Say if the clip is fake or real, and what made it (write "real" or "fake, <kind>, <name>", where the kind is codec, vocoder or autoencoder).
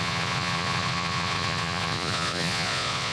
fake, vocoder, Vocos